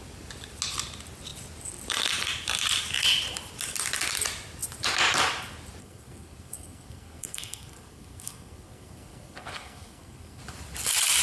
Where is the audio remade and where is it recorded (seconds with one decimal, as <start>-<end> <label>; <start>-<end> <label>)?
0.0-5.8 recorded; 5.8-10.4 remade; 10.4-11.2 recorded